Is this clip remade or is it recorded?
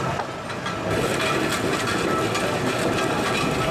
recorded